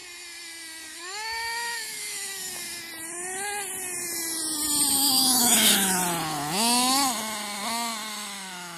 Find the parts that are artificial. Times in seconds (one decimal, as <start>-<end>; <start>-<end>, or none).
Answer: 0.9-2.3; 4.9-6.0; 8.1-8.8